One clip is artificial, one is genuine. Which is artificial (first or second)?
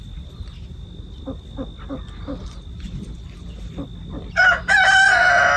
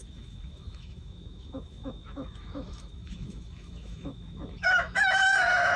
second